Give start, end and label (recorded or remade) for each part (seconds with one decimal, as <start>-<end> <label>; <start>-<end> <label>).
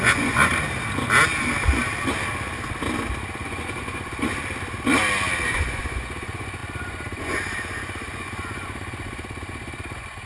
0.0-0.5 remade; 0.5-3.4 recorded; 3.4-4.3 remade; 4.3-5.5 recorded; 5.5-10.3 remade